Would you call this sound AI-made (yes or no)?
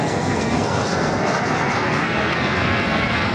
yes